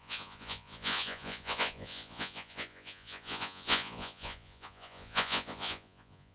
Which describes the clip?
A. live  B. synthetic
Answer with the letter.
B